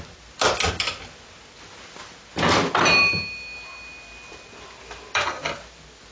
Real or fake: real